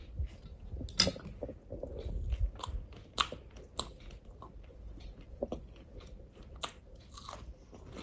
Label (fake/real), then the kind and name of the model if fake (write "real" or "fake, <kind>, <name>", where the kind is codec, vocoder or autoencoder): real